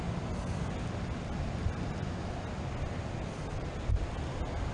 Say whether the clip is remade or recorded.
recorded